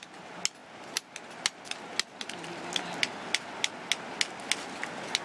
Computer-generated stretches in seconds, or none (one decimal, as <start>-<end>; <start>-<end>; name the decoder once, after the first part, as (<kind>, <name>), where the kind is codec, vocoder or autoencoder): none

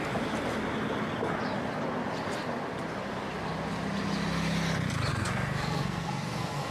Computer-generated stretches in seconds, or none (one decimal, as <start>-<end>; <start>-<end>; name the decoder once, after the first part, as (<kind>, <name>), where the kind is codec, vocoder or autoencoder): 5.1-6.7 (codec, SNAC)

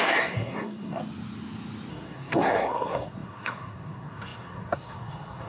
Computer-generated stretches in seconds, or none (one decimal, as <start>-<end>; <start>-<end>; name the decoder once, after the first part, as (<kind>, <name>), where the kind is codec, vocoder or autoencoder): 0.0-1.0 (codec, SNAC); 1.9-5.5

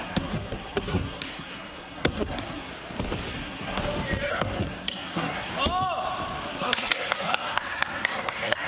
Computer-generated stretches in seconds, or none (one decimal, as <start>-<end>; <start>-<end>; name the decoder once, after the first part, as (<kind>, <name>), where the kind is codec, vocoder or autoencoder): 0.0-2.7 (codec, SNAC); 3.3-3.8; 4.3-5.5; 6.5-8.7

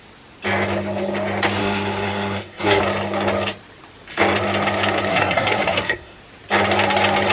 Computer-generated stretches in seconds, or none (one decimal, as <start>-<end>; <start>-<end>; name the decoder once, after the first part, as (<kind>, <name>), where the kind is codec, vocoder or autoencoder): 1.6-2.8 (codec, SNAC); 5.1-6.2

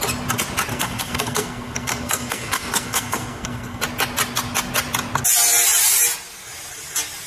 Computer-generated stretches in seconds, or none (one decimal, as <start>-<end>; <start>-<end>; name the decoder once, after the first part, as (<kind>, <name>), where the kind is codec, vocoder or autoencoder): 0.7-3.8 (codec, SNAC)

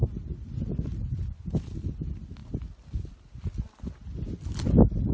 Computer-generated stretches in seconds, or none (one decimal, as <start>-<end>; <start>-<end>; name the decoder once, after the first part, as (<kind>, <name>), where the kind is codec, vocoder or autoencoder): none